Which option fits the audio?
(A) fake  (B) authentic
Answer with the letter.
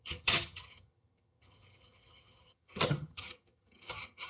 A